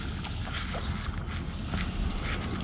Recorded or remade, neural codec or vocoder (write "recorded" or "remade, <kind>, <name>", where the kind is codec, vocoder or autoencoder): recorded